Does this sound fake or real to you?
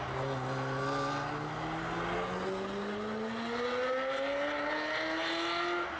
real